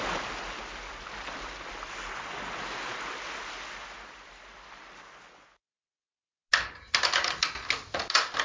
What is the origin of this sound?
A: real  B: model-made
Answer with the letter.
A